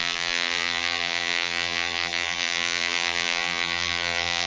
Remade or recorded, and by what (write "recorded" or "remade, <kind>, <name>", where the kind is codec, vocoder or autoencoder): remade, vocoder, BigVGAN v2